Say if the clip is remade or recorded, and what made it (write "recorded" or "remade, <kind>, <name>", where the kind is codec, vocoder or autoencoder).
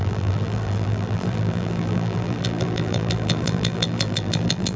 remade, vocoder, BigVGAN v2